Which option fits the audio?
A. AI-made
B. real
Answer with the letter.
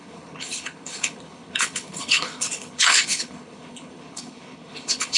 A